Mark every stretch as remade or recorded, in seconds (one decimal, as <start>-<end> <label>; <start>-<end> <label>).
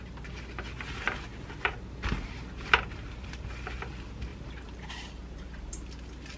0.0-1.3 recorded; 1.3-2.4 remade; 2.4-4.3 recorded; 4.3-4.9 remade; 4.9-6.4 recorded